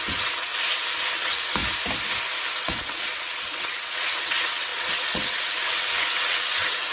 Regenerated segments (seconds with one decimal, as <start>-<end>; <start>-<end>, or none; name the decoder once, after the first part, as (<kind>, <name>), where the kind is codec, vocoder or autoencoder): 0.0-0.5 (vocoder, WaveNeXt); 1.0-1.6; 2.5-6.9